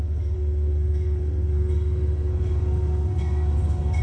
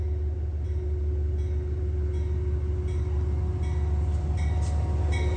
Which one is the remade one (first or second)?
first